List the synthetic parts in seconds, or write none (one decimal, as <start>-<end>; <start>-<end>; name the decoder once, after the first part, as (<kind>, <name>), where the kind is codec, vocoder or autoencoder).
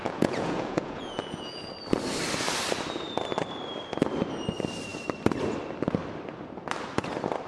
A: 0.0-1.7 (vocoder, Vocos)